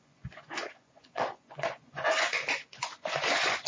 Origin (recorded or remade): remade